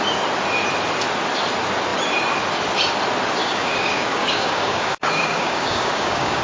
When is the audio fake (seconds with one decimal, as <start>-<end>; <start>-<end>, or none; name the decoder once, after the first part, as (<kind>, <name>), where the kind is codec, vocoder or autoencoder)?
3.4-6.4 (codec, DAC)